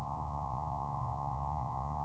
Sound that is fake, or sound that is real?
fake